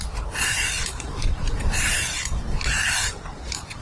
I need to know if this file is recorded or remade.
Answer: remade